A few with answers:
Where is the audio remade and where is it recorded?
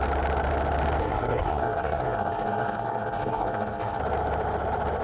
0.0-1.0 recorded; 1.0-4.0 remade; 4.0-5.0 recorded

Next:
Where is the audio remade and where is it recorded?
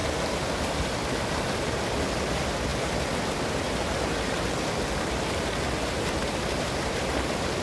0.0-7.6 recorded